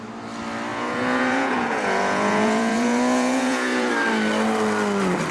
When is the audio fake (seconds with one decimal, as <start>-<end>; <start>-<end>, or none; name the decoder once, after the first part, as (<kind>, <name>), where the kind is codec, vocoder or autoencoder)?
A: 0.7-3.9 (vocoder, Vocos)